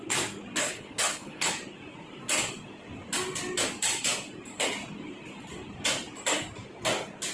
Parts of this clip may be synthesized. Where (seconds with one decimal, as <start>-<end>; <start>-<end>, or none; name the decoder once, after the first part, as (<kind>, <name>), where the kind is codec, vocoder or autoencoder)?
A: 0.6-1.5 (codec, HILCodec)